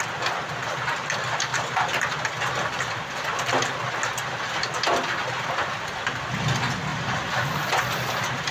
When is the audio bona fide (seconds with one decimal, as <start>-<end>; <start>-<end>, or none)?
0.0-1.5; 2.1-6.9; 7.8-8.5